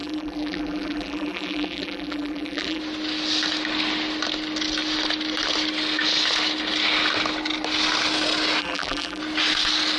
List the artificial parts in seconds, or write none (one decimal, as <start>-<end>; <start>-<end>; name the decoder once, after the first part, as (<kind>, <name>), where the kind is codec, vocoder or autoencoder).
0.0-2.8 (vocoder, BigVGAN v2); 8.6-9.2